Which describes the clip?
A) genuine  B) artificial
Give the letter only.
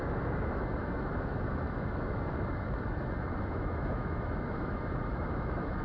B